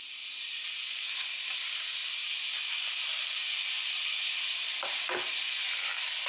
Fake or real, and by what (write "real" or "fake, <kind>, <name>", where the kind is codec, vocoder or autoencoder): real